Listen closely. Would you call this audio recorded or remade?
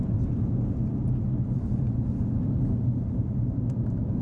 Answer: recorded